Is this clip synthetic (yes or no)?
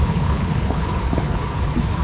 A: yes